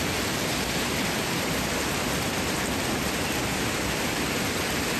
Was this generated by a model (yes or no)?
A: no